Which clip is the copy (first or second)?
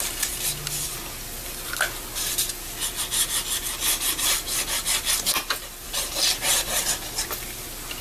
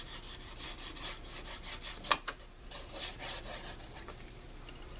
second